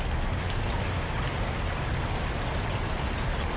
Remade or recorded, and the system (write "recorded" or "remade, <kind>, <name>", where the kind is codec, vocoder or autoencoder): recorded